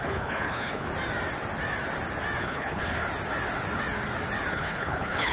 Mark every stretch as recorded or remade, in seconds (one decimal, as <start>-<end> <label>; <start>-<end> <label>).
0.0-0.9 remade; 0.9-2.4 recorded; 2.4-3.0 remade; 3.0-4.5 recorded; 4.5-5.3 remade